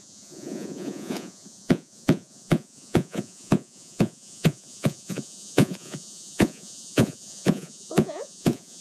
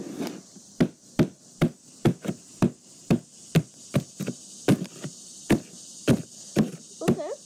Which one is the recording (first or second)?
second